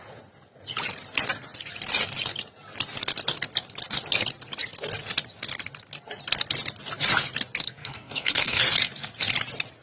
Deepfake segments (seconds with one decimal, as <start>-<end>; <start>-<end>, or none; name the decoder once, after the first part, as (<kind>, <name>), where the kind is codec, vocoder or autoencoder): 7.8-8.6 (codec, SNAC)